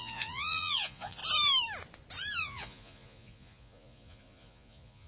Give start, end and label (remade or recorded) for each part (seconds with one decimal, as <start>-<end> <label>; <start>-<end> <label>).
0.0-1.2 remade; 1.2-2.4 recorded; 2.4-5.1 remade